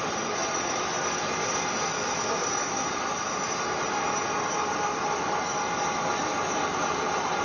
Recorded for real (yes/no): yes